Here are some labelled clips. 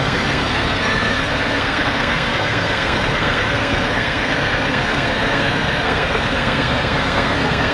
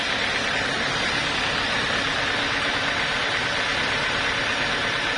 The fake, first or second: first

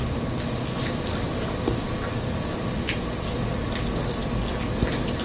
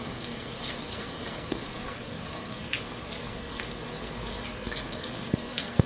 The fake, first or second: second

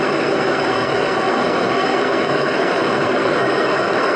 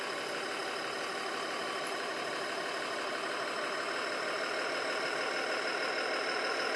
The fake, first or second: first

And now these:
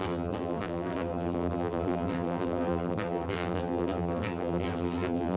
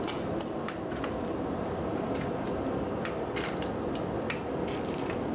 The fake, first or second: first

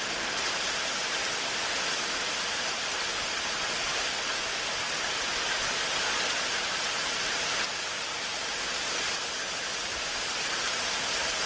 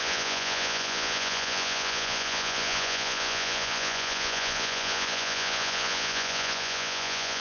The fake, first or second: second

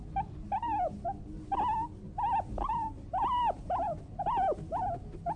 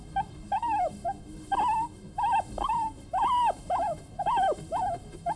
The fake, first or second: second